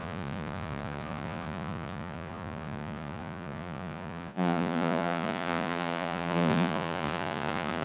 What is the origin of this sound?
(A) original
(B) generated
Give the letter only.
B